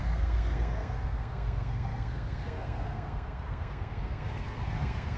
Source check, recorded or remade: remade